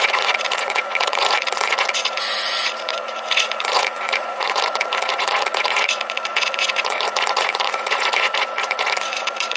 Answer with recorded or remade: remade